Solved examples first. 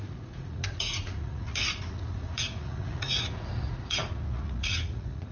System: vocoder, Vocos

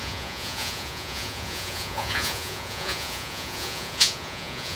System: vocoder, Vocos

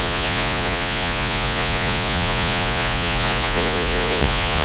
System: vocoder, Vocos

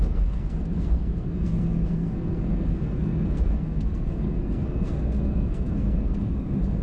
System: codec, SNAC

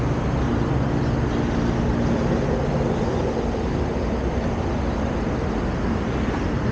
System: none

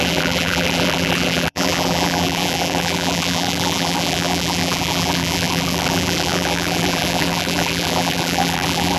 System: vocoder, BigVGAN v2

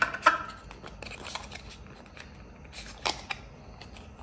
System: none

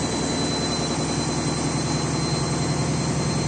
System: none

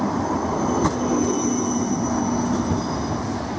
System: none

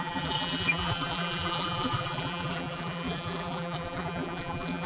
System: vocoder, BigVGAN v2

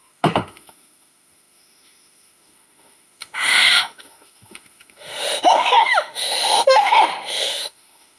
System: autoencoder, DAC-VAE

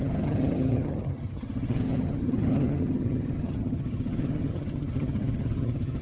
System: vocoder, HiFi-GAN